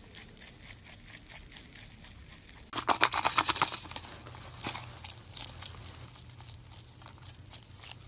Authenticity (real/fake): real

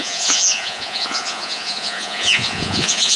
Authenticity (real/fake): fake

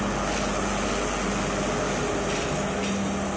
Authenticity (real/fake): real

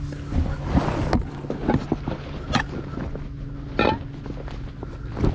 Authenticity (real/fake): real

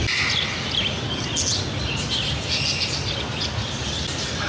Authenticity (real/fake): real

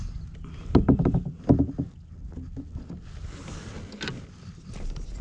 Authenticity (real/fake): real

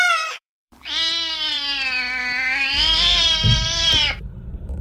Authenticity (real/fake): fake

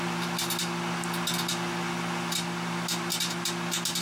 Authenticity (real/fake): real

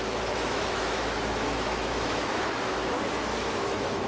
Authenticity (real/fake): fake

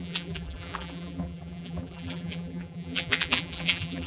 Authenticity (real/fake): fake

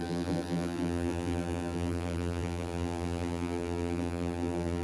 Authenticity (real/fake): fake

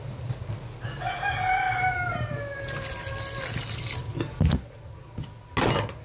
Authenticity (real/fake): real